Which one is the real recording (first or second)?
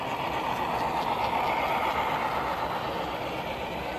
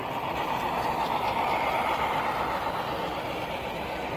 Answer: first